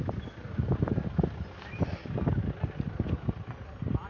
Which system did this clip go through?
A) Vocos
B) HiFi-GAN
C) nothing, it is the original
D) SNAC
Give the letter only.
C